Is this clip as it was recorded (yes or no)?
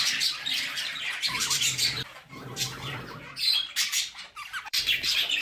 no